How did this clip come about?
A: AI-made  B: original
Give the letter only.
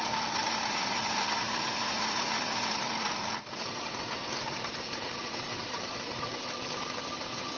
A